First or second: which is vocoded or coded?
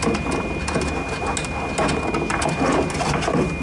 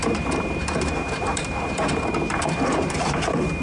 second